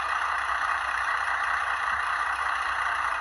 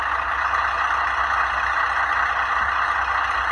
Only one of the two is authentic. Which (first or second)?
second